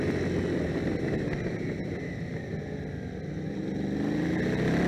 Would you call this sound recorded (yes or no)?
yes